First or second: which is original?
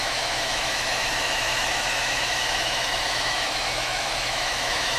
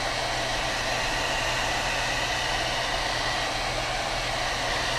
second